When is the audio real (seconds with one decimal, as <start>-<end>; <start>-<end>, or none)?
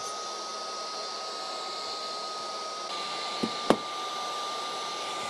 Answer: 0.0-5.3